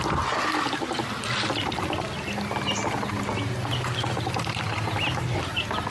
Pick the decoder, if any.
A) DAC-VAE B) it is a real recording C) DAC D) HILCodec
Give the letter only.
B